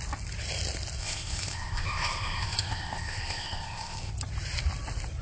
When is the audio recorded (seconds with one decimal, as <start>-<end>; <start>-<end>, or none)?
0.0-1.0; 4.1-5.2